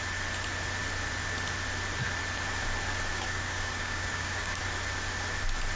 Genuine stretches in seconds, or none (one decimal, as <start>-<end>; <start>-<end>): 0.0-3.1; 4.6-5.8